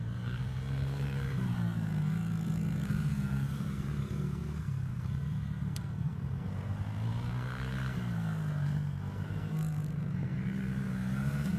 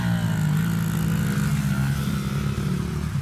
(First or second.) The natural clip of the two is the second